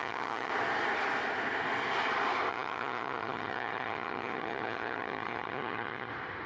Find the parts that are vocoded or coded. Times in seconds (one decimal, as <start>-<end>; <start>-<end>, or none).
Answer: 0.0-0.5; 2.5-6.1